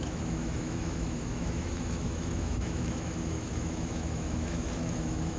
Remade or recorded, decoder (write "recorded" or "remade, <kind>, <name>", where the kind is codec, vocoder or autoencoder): remade, autoencoder, DAC-VAE